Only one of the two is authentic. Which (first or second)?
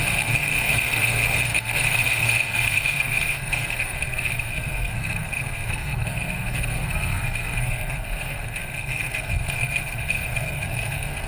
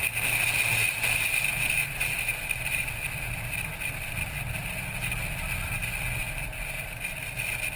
second